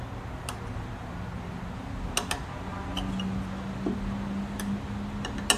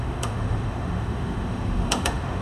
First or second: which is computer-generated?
second